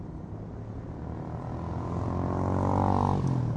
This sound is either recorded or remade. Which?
recorded